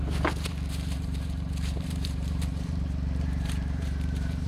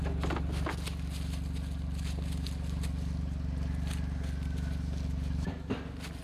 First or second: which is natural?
second